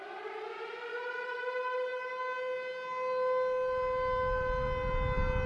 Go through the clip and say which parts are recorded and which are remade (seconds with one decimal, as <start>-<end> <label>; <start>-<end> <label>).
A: 0.0-5.5 recorded